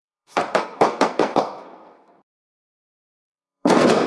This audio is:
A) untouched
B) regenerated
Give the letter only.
B